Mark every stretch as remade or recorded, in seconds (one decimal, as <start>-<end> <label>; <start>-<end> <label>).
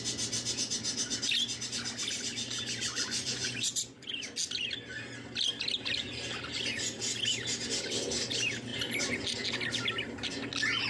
0.0-2.9 recorded; 2.9-4.1 remade; 4.1-10.9 recorded